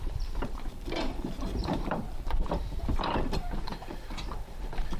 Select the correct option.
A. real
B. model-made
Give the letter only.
B